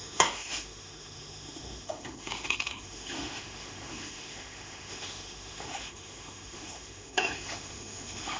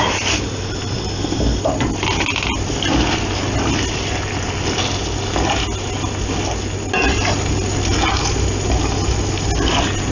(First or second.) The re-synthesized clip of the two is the first